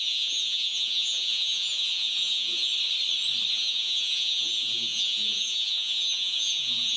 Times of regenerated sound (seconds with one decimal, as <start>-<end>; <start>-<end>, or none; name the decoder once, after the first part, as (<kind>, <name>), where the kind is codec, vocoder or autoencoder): 0.0-2.7 (vocoder, Vocos); 3.5-7.0